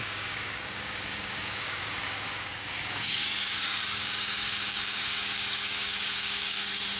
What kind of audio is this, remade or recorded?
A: remade